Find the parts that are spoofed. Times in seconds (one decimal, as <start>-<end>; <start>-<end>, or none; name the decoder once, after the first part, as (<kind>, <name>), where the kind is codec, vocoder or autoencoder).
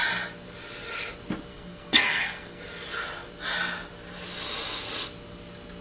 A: 1.5-2.6 (codec, SNAC)